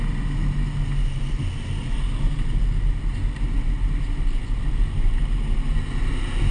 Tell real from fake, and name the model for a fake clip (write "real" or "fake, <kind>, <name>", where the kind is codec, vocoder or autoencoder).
real